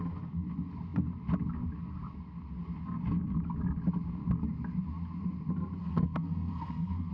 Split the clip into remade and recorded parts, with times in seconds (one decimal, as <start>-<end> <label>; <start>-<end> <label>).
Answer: 0.0-5.8 recorded; 5.8-7.1 remade